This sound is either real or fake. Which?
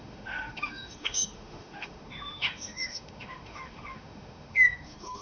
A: fake